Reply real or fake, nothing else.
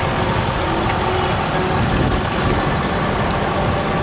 real